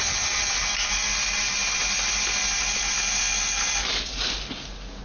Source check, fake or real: real